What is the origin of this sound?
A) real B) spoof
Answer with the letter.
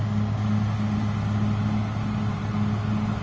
A